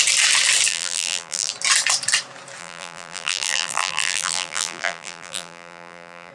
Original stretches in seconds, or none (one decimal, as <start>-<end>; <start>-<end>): 0.0-0.7; 1.5-2.6